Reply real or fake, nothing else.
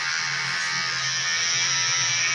real